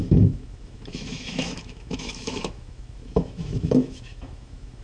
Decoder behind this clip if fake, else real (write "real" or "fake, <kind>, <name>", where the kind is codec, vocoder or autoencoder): fake, autoencoder, DAC-VAE